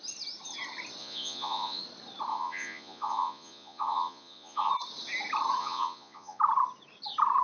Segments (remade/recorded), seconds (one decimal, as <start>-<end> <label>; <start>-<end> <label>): 0.0-1.0 recorded; 1.0-1.8 remade; 1.8-2.3 recorded; 2.3-4.7 remade; 4.7-5.6 recorded; 5.6-6.4 remade; 6.4-7.4 recorded